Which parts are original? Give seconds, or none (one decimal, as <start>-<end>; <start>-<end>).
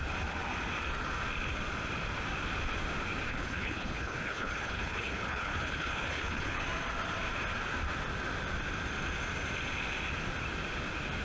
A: 0.0-3.3; 6.6-11.2